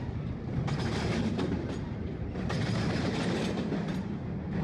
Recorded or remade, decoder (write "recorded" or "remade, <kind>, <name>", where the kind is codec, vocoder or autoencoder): recorded